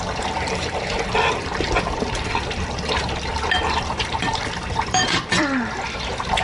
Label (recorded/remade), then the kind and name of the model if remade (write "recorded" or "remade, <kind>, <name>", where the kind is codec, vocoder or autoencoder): remade, vocoder, BigVGAN v2